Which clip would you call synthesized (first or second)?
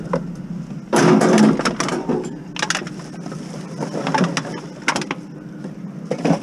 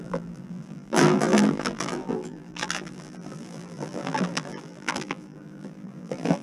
second